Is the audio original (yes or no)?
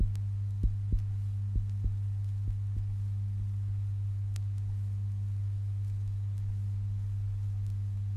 yes